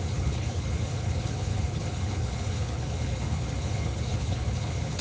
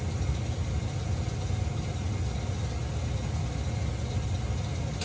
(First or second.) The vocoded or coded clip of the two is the first